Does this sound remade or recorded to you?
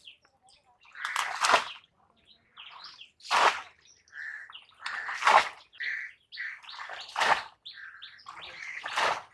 recorded